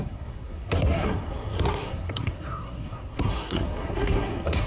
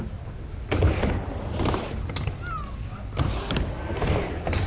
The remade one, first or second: first